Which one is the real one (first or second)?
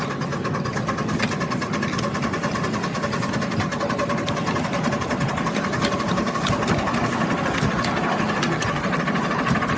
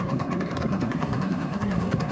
first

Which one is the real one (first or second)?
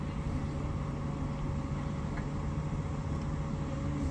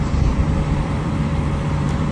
first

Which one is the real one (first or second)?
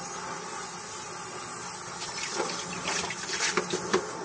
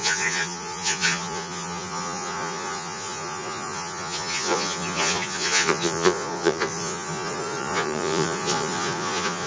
first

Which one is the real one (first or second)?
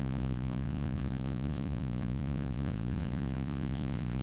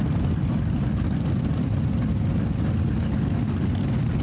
second